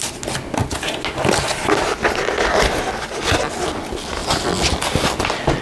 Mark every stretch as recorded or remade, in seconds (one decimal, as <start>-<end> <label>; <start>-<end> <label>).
0.0-5.6 recorded